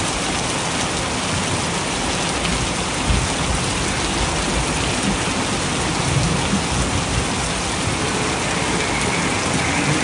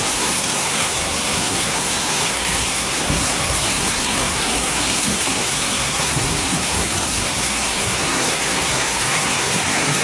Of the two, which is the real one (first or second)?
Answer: first